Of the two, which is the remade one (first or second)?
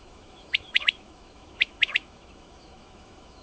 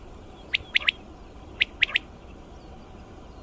first